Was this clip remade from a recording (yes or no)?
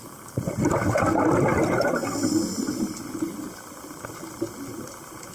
no